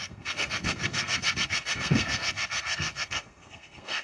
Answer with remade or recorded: remade